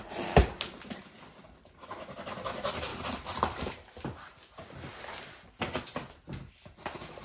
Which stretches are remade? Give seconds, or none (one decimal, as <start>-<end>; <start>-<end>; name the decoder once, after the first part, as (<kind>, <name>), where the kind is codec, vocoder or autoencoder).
0.0-7.2 (vocoder, BigVGAN v2)